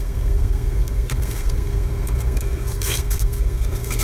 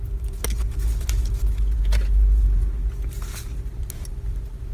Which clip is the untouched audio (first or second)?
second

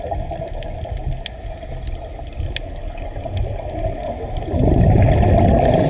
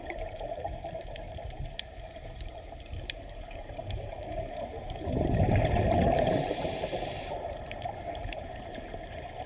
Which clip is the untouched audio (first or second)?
first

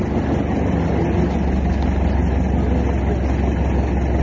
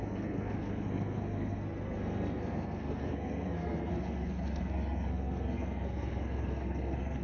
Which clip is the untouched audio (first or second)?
first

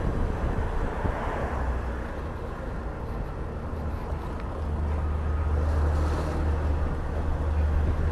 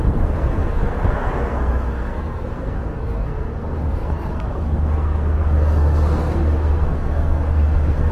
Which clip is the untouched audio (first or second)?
first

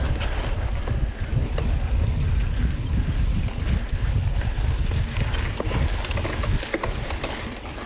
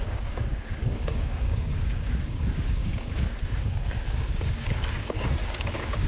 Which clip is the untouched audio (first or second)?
first